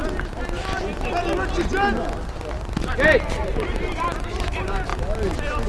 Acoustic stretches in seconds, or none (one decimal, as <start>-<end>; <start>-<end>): 0.0-2.8; 4.9-5.7